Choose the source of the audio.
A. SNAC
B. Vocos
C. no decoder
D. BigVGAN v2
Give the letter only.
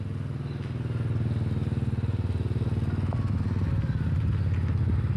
C